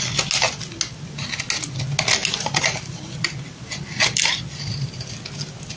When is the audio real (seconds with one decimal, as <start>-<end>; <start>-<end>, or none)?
0.0-5.8